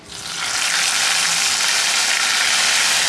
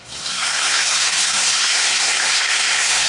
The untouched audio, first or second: first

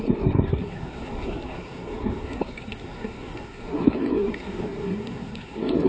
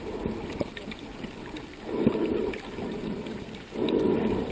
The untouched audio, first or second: second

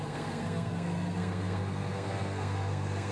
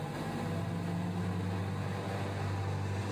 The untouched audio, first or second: second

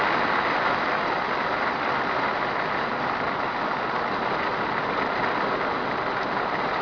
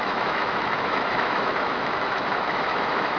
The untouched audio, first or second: first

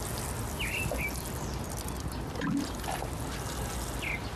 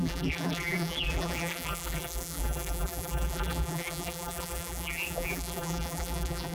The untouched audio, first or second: first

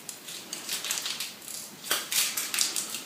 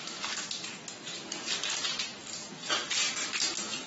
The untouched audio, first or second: second